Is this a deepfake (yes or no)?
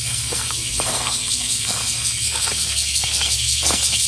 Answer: yes